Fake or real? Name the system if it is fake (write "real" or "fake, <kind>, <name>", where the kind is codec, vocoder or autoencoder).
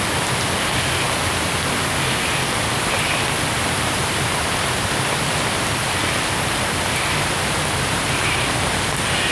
real